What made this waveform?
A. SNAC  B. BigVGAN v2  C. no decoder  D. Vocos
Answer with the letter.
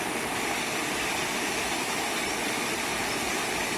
C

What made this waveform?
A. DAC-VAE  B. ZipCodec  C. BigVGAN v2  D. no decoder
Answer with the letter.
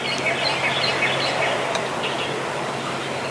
D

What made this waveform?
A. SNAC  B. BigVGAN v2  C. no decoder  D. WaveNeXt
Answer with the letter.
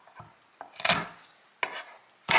C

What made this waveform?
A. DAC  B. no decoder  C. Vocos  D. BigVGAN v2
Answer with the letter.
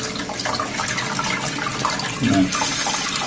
B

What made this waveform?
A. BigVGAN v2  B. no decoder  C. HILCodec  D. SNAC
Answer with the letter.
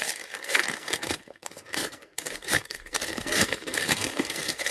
D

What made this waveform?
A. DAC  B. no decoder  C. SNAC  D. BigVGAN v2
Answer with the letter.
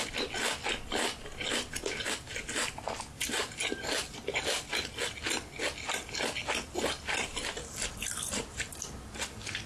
B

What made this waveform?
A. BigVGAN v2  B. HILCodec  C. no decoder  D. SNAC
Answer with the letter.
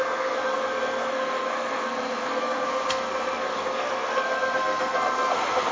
D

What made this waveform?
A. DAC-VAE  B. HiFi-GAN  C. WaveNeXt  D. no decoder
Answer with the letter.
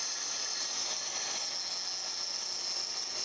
D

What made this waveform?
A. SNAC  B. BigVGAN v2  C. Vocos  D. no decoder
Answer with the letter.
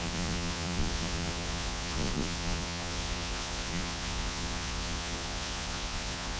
C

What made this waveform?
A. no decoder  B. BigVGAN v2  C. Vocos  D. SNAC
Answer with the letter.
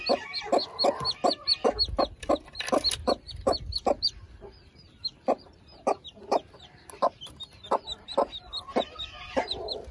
A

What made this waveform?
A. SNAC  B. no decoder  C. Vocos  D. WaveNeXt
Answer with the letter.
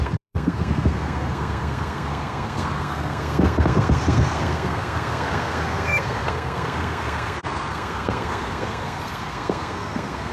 A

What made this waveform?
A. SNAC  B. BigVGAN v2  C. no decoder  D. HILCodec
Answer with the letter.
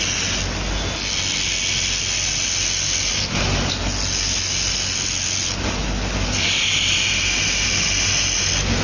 C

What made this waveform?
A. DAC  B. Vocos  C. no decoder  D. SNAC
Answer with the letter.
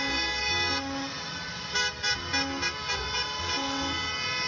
C